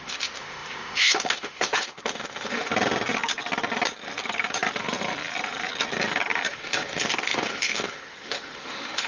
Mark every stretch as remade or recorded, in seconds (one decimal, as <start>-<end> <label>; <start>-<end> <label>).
0.0-2.7 remade; 2.7-6.5 recorded; 6.5-9.1 remade